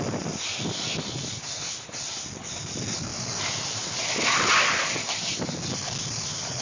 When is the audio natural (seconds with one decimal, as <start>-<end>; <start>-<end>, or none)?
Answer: none